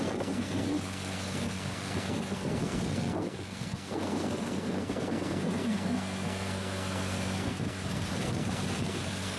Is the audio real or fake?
fake